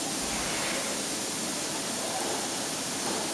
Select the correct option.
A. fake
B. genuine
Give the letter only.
B